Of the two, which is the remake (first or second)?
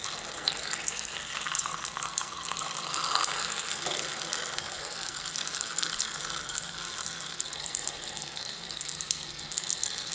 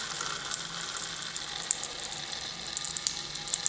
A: first